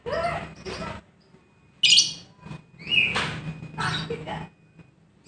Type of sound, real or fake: real